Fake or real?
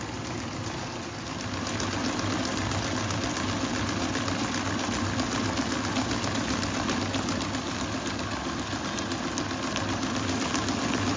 real